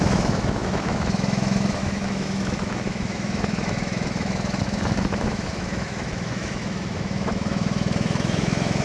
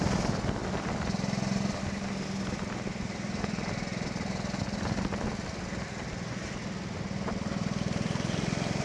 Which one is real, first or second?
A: second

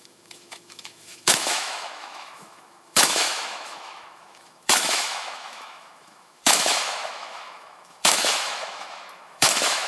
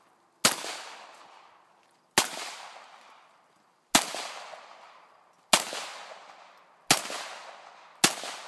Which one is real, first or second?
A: second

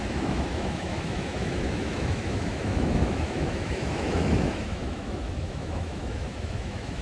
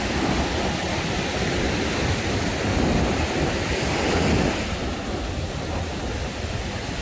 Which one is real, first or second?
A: second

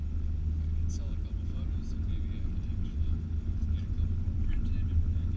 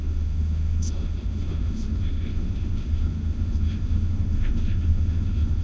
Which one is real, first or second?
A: first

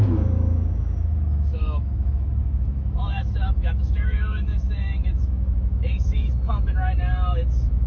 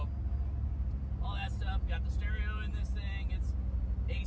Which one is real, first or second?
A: second